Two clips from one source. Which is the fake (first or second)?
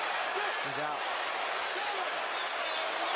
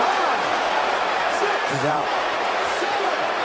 second